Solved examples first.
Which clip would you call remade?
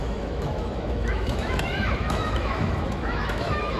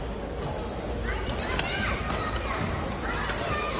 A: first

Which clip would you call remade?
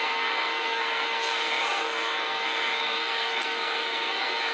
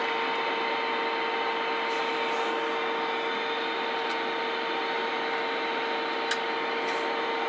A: first